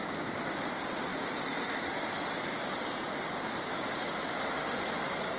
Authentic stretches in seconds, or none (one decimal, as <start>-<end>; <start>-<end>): 0.0-5.4